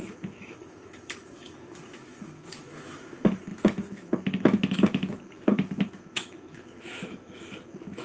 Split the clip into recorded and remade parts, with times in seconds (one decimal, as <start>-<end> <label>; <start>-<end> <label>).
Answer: 0.0-8.0 remade